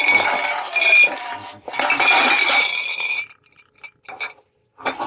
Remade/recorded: recorded